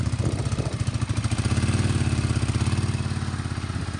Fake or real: real